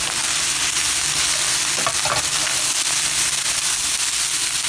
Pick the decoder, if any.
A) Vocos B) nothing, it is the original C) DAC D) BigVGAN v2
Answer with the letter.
B